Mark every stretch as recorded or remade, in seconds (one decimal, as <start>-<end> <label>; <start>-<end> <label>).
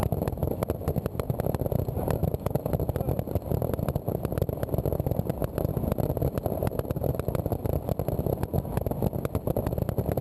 0.0-10.2 recorded